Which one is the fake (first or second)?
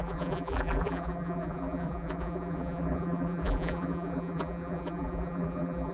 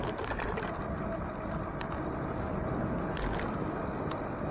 first